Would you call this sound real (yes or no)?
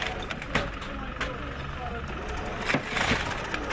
yes